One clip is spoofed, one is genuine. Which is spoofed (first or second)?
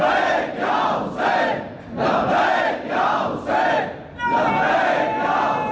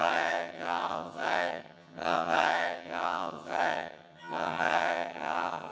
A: second